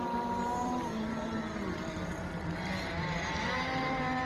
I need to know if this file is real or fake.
real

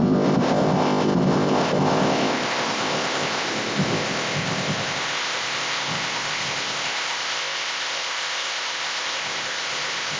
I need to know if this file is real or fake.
fake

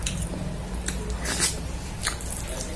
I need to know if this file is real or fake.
real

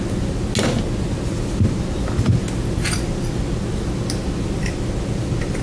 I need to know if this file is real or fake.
real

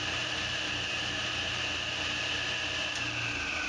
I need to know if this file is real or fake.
real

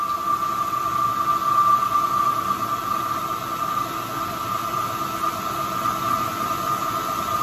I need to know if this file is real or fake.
real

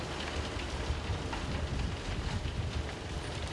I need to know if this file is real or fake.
real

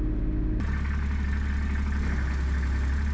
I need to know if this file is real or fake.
real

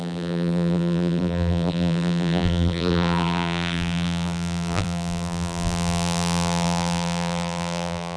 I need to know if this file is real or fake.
fake